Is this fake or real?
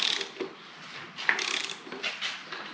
real